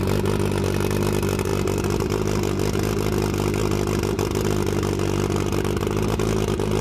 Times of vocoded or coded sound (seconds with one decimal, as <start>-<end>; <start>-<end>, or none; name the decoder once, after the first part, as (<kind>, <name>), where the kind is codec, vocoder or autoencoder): none